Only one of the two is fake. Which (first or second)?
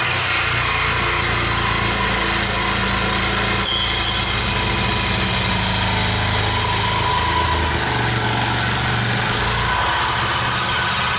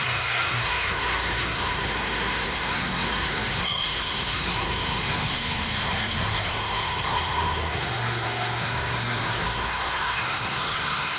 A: second